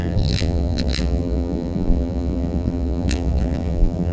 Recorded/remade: remade